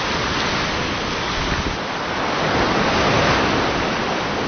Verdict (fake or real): real